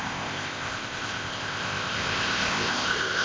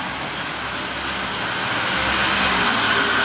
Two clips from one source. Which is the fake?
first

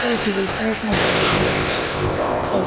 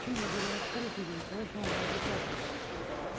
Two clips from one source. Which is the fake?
first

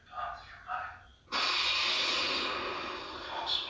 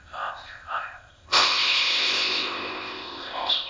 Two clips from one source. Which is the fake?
second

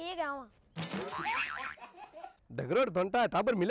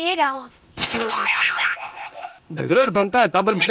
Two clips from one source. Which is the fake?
second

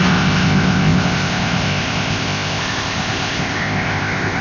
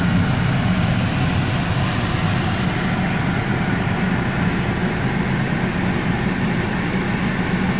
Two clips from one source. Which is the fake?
first